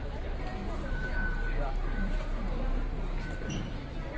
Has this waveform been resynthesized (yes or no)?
no